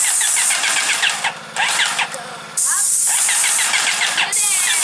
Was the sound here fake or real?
real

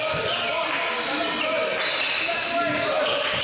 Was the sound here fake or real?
real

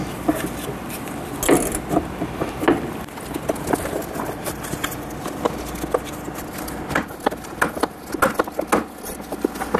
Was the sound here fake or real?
real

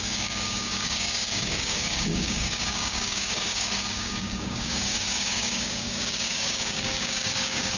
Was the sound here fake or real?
fake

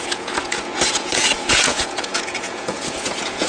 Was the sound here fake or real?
fake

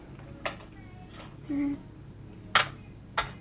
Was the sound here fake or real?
real